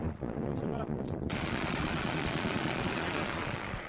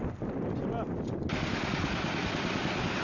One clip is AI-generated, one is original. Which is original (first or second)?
second